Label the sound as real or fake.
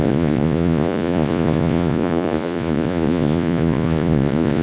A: fake